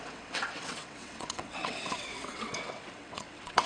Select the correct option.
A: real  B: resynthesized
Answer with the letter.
B